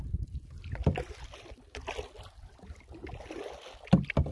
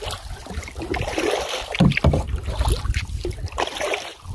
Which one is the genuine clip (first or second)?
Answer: first